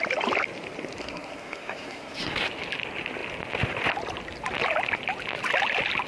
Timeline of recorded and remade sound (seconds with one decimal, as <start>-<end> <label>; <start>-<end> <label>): 0.0-1.0 recorded; 1.0-2.4 remade; 2.4-6.1 recorded